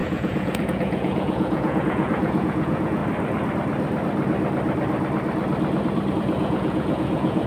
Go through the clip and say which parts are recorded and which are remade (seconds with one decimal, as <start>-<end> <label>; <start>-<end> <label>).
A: 0.0-3.0 remade; 3.0-6.1 recorded; 6.1-7.5 remade